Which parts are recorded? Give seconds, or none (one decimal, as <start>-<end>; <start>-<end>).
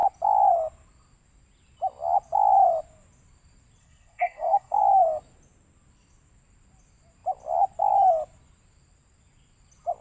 0.0-3.8; 4.8-10.0